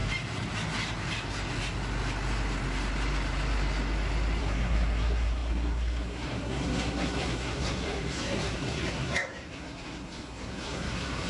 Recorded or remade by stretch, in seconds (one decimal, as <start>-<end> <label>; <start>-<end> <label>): 0.0-4.4 recorded; 4.4-11.3 remade